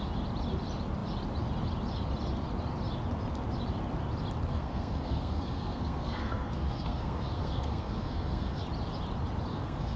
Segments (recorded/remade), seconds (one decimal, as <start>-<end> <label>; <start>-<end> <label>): 0.0-4.5 recorded; 4.5-8.6 remade; 8.6-9.5 recorded; 9.5-10.0 remade